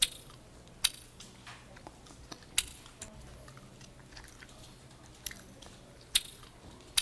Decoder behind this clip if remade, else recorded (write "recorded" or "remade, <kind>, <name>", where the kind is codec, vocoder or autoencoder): recorded